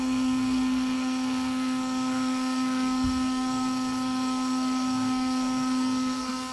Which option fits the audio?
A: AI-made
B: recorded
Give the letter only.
A